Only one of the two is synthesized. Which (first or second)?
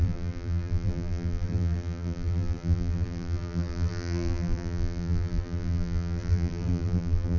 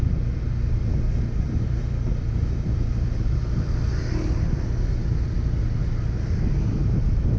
first